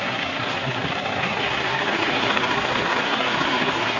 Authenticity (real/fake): fake